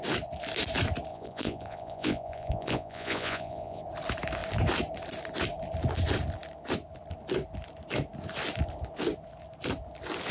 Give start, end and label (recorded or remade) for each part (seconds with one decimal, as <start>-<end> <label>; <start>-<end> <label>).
0.0-1.1 recorded; 1.1-3.8 remade; 3.8-10.3 recorded